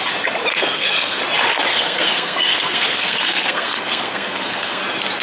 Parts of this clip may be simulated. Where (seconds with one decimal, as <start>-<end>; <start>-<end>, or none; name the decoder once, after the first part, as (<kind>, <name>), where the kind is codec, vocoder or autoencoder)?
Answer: 0.5-1.2 (codec, SNAC); 1.7-4.8